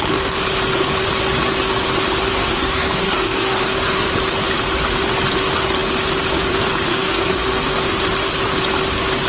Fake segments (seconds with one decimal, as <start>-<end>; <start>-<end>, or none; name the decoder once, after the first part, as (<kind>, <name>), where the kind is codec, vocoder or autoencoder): 2.3-4.1 (codec, SNAC); 6.9-7.9